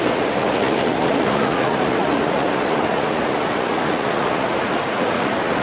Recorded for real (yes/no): no